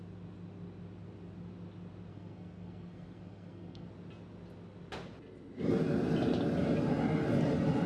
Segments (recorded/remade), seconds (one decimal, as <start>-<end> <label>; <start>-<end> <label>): 0.0-2.1 recorded; 2.1-3.9 remade; 3.9-7.9 recorded